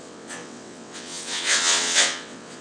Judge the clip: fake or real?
fake